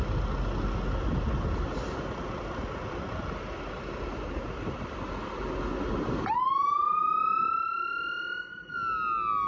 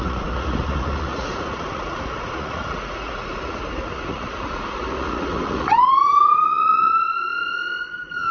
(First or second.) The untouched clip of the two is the first